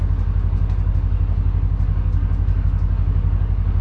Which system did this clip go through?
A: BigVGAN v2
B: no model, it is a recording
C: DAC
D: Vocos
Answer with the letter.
C